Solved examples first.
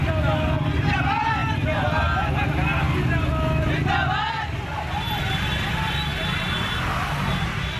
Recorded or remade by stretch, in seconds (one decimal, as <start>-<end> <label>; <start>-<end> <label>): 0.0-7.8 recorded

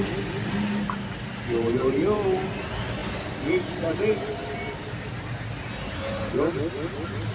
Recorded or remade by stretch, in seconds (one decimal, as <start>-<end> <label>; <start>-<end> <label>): 0.0-7.3 recorded

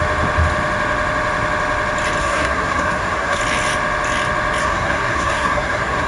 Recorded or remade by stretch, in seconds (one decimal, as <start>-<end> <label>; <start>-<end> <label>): 0.0-2.2 recorded; 2.2-3.4 remade; 3.4-4.6 recorded; 4.6-6.1 remade

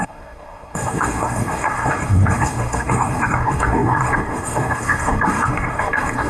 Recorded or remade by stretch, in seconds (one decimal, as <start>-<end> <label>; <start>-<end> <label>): 0.0-6.3 remade

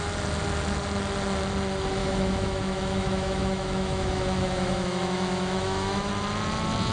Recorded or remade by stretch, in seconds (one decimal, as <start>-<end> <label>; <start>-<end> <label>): 0.0-2.0 recorded; 2.0-6.1 remade; 6.1-6.9 recorded

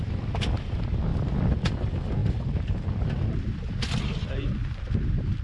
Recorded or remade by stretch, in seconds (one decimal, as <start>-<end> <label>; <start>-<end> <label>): 0.0-5.4 recorded

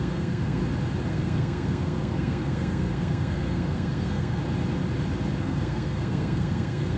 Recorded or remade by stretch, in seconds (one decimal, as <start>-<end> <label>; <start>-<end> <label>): 0.0-0.6 remade; 0.6-1.1 recorded; 1.1-4.4 remade; 4.4-5.4 recorded; 5.4-7.0 remade

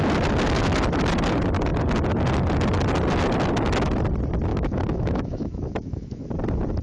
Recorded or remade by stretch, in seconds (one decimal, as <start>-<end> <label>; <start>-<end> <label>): 0.0-4.5 recorded; 4.5-6.3 remade; 6.3-6.8 recorded